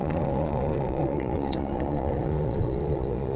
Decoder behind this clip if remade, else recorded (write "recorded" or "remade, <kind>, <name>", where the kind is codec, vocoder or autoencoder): remade, vocoder, Vocos